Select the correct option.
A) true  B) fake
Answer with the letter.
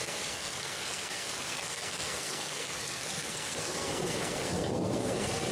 B